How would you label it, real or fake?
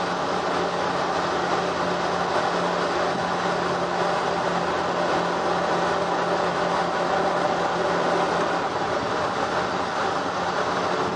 real